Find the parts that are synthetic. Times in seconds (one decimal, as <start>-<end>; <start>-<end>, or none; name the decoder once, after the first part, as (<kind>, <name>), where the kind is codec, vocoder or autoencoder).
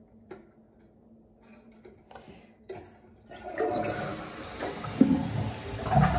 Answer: none